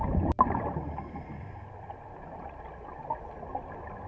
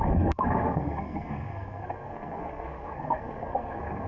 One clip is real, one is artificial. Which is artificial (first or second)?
second